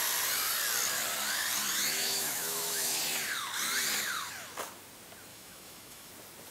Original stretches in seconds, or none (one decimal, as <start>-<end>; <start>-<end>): 0.0-1.7; 3.0-5.3; 6.1-6.5